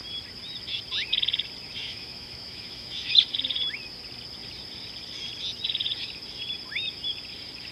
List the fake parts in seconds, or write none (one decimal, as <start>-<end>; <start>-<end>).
1.8-3.1